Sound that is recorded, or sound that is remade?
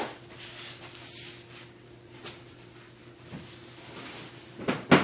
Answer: recorded